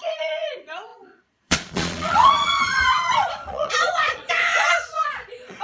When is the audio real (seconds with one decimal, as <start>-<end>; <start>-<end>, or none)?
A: none